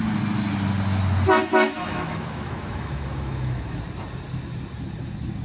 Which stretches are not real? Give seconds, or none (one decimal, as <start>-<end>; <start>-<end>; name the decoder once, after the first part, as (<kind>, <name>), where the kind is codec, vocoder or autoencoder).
1.5-3.8 (autoencoder, DAC-VAE)